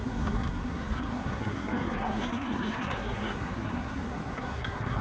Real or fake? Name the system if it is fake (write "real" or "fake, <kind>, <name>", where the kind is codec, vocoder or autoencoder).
fake, codec, SNAC